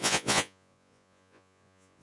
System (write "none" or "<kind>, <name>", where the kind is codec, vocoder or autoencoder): vocoder, Vocos